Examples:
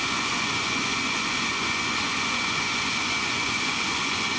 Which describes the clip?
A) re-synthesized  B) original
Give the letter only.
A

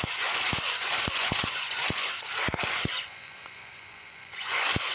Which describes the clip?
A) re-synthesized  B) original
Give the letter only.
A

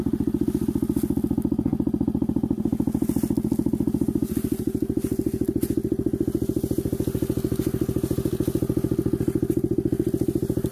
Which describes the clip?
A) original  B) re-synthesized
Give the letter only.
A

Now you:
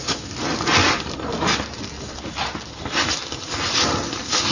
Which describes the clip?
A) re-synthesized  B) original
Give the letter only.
B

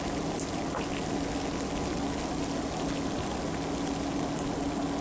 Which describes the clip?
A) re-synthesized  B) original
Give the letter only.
B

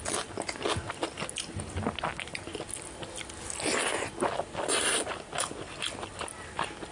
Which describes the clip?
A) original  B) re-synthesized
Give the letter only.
A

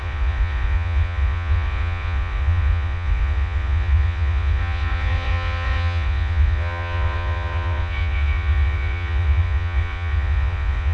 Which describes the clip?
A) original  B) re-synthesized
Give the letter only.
B